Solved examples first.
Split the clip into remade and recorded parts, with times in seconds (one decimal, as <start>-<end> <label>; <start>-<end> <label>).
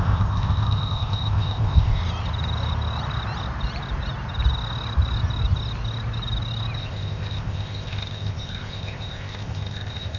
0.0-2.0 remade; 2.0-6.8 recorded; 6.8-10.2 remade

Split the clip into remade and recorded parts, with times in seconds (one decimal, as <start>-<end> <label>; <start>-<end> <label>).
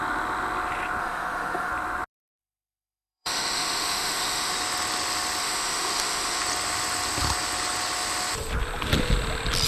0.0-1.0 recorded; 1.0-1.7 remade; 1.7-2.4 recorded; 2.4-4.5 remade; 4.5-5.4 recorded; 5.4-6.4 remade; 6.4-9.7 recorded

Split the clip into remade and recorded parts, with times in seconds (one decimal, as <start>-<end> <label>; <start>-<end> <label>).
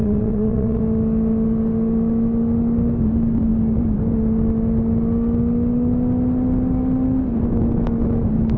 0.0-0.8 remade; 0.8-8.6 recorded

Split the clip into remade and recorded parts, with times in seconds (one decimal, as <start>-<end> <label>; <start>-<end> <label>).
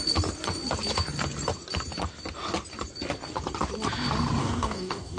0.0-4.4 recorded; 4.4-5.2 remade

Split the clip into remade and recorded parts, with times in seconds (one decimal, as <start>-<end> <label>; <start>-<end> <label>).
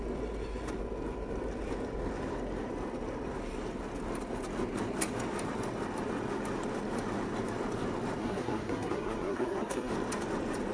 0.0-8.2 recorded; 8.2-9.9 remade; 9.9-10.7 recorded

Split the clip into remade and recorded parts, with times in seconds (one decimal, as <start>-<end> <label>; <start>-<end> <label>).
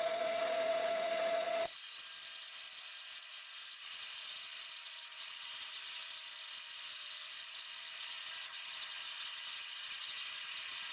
0.0-2.0 remade; 2.0-3.8 recorded; 3.8-4.2 remade; 4.2-5.2 recorded; 5.2-6.0 remade; 6.0-8.0 recorded; 8.0-10.9 remade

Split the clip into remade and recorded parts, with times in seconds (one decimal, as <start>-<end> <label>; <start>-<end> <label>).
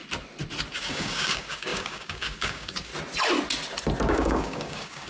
0.0-0.7 recorded; 0.7-2.9 remade; 2.9-4.1 recorded; 4.1-5.1 remade